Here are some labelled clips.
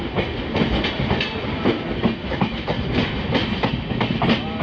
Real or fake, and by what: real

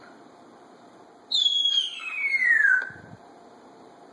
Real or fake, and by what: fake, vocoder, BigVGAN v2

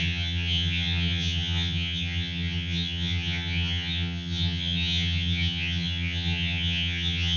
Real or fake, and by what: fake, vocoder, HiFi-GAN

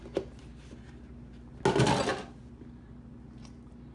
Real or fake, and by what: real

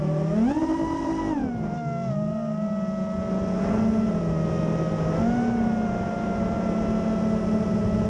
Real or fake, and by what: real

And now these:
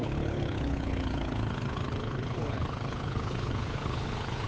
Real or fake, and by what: fake, codec, HILCodec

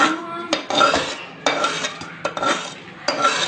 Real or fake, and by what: real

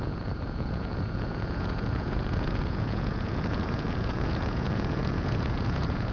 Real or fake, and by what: fake, vocoder, Vocos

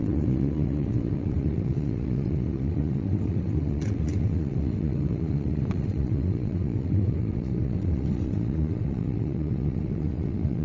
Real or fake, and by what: fake, vocoder, WaveNeXt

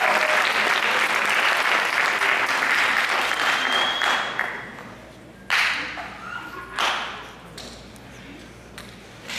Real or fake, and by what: real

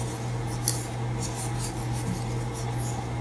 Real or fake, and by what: real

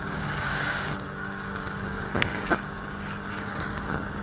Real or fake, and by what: fake, codec, DAC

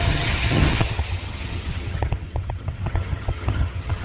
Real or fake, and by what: fake, vocoder, HiFi-GAN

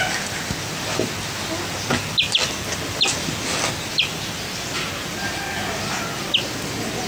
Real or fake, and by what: real